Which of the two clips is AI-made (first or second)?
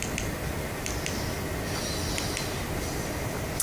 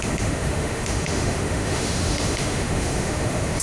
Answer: second